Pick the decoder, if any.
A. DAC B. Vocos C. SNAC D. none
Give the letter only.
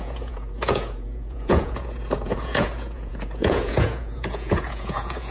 B